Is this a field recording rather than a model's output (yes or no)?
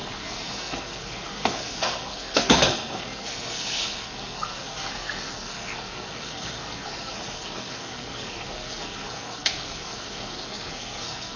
no